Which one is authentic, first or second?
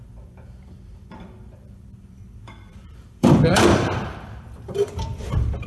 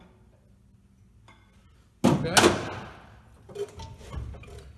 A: second